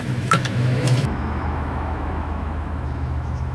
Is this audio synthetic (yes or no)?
yes